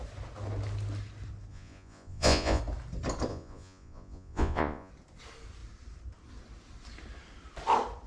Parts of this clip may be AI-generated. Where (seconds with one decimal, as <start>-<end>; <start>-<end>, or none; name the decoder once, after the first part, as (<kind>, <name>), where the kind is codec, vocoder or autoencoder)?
1.5-2.6 (vocoder, Vocos); 3.3-4.9